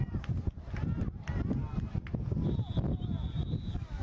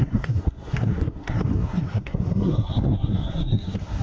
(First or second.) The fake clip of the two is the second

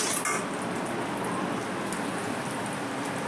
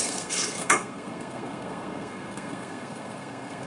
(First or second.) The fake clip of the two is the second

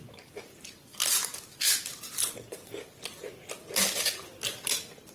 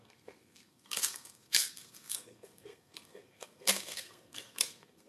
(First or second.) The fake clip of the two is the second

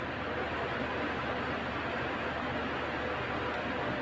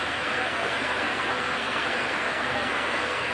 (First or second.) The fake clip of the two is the second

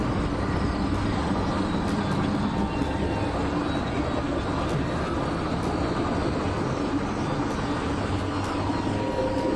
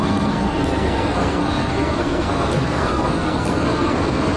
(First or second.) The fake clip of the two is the second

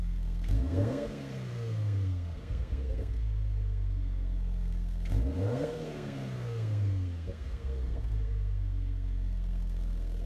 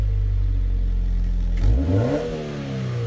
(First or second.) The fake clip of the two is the first